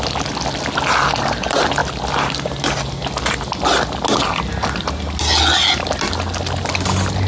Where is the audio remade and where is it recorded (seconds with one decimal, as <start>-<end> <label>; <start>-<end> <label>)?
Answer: 0.0-7.3 recorded